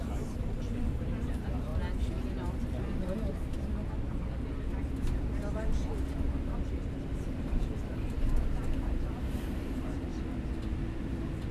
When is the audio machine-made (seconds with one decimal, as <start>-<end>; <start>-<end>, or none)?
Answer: 0.0-1.7; 6.7-10.1; 10.7-11.5